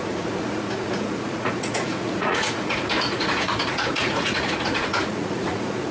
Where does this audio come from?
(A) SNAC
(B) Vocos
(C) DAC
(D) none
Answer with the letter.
B